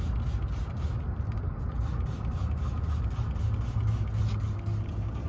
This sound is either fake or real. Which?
real